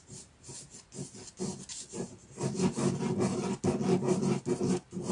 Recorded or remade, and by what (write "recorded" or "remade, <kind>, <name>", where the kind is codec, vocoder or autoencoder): recorded